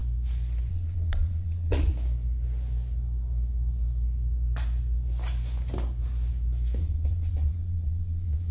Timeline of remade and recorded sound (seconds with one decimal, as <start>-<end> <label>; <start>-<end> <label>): 0.0-0.7 recorded; 0.7-1.9 remade; 1.9-6.8 recorded; 6.8-8.5 remade